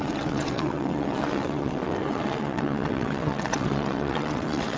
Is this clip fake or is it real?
fake